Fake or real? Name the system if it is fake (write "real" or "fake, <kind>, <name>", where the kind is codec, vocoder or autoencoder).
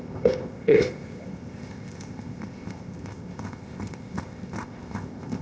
fake, codec, ZipCodec